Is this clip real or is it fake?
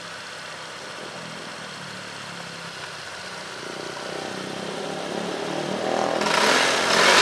real